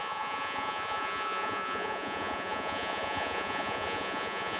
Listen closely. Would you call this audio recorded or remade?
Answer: remade